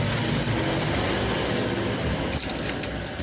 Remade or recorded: recorded